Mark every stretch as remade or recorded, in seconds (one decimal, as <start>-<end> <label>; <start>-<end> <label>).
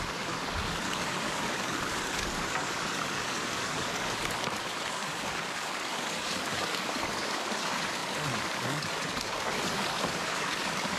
0.0-11.0 remade